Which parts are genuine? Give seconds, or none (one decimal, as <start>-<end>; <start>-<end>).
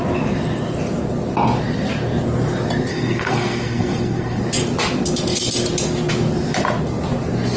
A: 0.0-2.9; 4.4-7.6